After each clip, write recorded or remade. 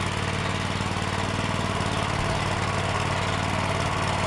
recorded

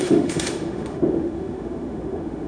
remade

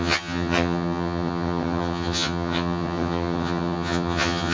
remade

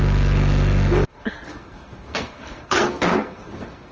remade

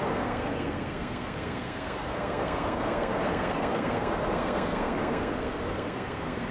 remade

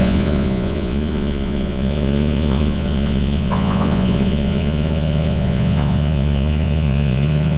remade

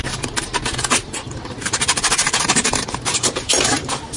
remade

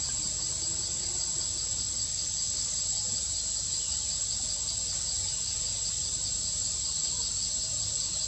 recorded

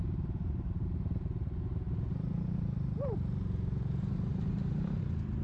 recorded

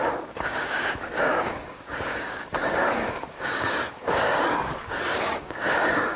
remade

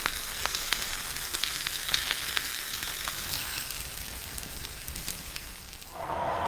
remade